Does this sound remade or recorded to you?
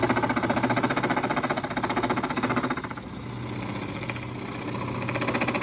recorded